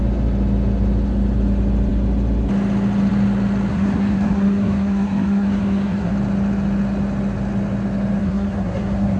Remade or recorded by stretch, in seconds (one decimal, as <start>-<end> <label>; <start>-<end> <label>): 0.0-3.7 recorded; 3.7-6.1 remade; 6.1-8.2 recorded; 8.2-9.2 remade